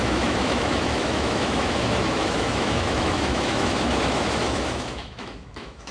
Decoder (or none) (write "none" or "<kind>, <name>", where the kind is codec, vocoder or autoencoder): autoencoder, DAC-VAE